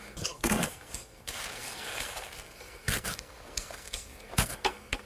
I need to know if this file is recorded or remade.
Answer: remade